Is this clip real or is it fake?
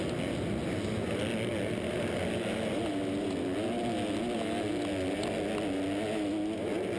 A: real